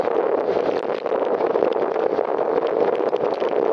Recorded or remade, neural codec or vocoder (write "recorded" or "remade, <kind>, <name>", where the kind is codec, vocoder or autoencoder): recorded